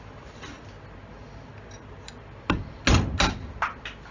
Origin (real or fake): real